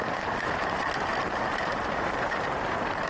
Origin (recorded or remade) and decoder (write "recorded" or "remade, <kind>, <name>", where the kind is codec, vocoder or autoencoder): remade, vocoder, BigVGAN v2